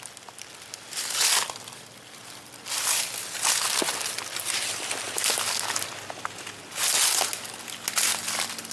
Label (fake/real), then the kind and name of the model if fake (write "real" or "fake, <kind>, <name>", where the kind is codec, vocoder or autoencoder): real